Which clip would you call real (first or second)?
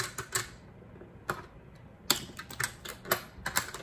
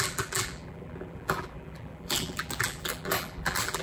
first